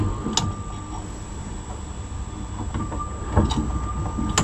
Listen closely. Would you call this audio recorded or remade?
recorded